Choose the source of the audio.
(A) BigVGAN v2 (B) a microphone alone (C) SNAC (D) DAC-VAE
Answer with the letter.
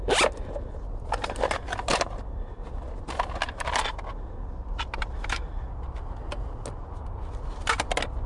B